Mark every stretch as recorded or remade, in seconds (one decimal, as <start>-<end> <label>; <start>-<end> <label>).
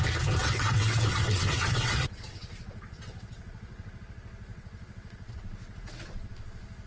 0.0-0.4 recorded; 0.4-4.0 remade; 4.0-4.5 recorded; 4.5-6.3 remade; 6.3-6.9 recorded